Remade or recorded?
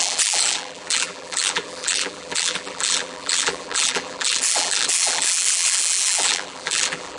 remade